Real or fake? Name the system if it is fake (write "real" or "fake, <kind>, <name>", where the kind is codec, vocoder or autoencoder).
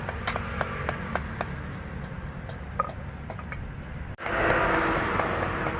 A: real